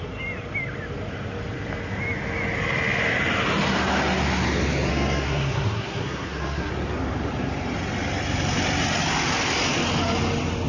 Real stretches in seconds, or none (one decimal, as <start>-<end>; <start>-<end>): 0.0-4.9; 6.7-10.7